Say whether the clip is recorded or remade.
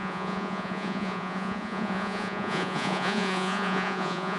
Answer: remade